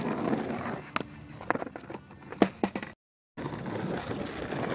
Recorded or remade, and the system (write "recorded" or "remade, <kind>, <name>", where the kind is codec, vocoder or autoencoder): recorded